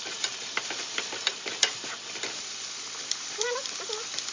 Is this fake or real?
fake